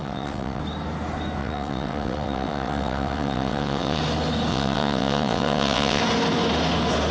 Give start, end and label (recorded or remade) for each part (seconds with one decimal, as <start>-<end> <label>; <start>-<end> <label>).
0.0-0.6 remade; 0.6-1.4 recorded; 1.4-4.0 remade; 4.0-4.5 recorded; 4.5-6.0 remade; 6.0-7.1 recorded